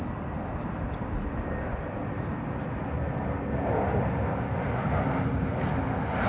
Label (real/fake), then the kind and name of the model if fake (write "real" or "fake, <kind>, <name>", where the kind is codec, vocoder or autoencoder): real